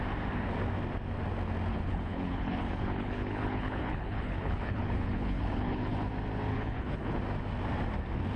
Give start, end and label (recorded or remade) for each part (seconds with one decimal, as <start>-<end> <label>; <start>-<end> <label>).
0.0-1.7 recorded; 1.7-6.1 remade; 6.1-6.5 recorded; 6.5-7.2 remade; 7.2-8.4 recorded